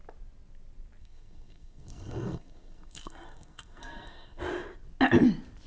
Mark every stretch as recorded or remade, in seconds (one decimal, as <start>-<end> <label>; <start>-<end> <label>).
0.0-1.0 recorded; 1.0-4.4 remade; 4.4-5.7 recorded